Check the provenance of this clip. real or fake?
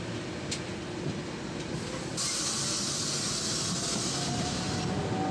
real